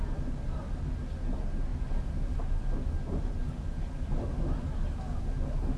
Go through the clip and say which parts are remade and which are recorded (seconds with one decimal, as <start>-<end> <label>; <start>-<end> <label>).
0.0-5.8 recorded